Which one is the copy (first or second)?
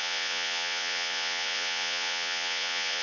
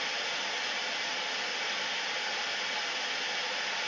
first